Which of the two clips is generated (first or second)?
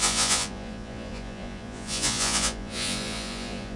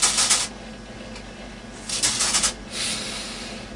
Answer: first